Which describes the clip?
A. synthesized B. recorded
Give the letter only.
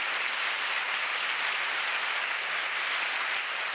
B